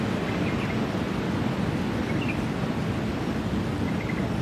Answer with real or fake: real